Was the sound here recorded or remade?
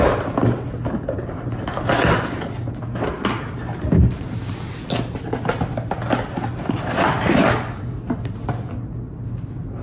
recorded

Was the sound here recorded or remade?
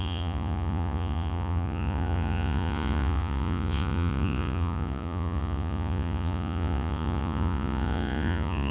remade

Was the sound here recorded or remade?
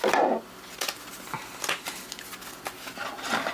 recorded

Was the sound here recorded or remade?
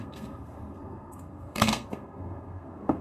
remade